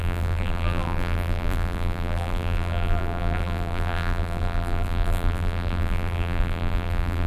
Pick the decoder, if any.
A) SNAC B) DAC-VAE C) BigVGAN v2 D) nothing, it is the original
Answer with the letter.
C